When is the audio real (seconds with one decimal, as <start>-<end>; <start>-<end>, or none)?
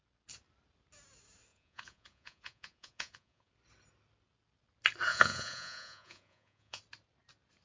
0.0-1.5; 3.5-5.1; 6.8-7.6